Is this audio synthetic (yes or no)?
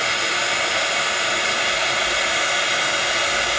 no